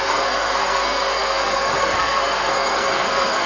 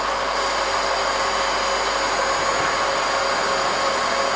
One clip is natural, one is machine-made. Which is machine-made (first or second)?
first